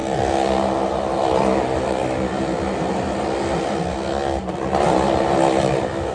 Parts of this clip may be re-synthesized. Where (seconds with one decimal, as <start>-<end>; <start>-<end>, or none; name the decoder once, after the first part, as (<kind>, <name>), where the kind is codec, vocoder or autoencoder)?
none